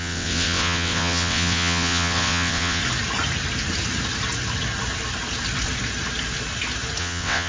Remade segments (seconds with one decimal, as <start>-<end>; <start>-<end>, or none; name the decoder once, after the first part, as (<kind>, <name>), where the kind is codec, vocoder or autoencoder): 0.0-2.8 (vocoder, WaveNeXt); 7.0-7.5